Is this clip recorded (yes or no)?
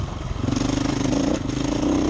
yes